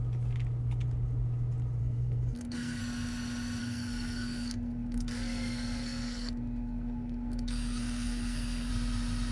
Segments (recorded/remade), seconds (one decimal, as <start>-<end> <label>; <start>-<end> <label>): 0.0-1.8 recorded; 1.8-2.8 remade; 2.8-3.6 recorded; 3.6-8.7 remade; 8.7-9.3 recorded